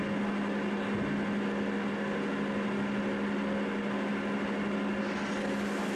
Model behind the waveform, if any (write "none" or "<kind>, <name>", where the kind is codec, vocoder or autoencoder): none